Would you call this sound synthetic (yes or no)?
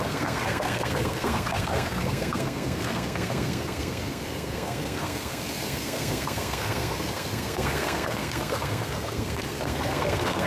yes